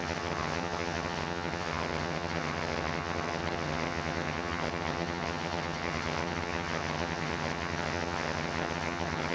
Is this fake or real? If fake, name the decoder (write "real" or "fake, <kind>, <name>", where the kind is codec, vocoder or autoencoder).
fake, vocoder, HiFi-GAN